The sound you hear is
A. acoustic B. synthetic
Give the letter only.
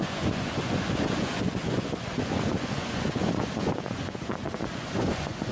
B